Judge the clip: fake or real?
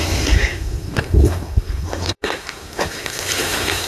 fake